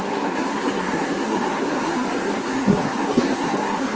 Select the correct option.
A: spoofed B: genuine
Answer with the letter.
A